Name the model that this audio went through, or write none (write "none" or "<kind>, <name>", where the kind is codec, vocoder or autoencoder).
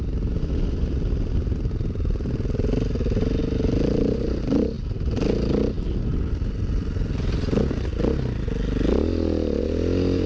none